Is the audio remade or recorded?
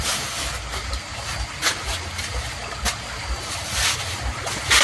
recorded